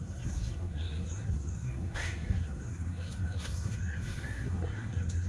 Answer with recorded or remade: remade